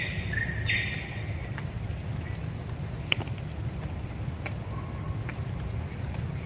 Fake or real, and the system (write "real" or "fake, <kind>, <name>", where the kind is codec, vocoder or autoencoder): real